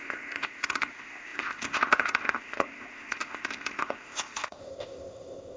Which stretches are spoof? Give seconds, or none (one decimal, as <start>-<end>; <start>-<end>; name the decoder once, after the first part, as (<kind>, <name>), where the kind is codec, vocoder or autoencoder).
0.0-5.6 (codec, ZipCodec)